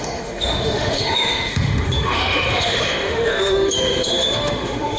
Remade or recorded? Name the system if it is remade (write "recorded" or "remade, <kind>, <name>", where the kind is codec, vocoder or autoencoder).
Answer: remade, autoencoder, DAC-VAE